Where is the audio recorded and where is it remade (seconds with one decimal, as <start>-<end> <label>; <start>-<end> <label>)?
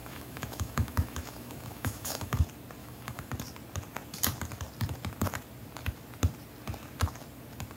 0.0-2.4 remade; 2.4-2.8 recorded; 2.8-3.3 remade; 3.3-7.8 recorded